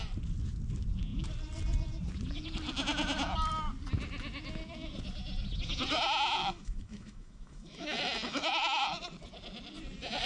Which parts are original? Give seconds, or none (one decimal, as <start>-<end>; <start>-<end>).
0.0-6.4; 8.8-10.3